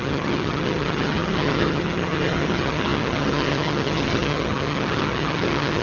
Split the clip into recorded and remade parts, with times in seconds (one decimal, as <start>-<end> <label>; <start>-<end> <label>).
0.0-5.8 remade

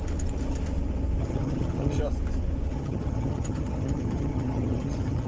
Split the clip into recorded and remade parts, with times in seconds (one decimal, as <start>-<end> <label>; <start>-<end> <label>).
0.0-1.2 recorded; 1.2-2.0 remade; 2.0-2.7 recorded; 2.7-5.3 remade

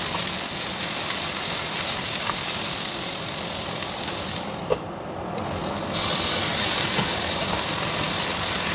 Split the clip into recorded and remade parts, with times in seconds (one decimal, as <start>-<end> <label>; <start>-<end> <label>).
0.0-8.7 recorded

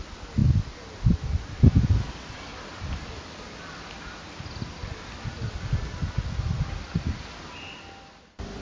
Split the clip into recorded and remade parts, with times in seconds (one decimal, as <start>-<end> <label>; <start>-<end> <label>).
0.0-8.6 recorded

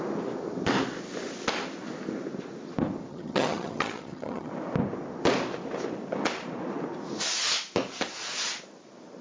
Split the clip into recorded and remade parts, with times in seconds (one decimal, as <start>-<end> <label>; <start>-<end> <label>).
0.0-3.1 recorded; 3.1-4.5 remade; 4.5-9.2 recorded

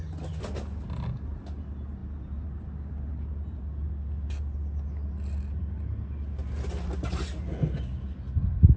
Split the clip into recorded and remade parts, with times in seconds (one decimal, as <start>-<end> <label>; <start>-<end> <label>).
0.0-8.8 recorded

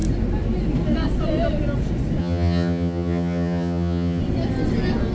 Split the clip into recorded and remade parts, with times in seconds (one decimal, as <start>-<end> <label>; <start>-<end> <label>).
0.0-2.2 recorded; 2.2-4.2 remade; 4.2-5.1 recorded

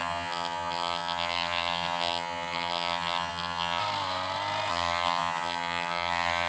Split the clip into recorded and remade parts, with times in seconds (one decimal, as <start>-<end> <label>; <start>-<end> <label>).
0.0-3.8 remade; 3.8-4.7 recorded; 4.7-6.5 remade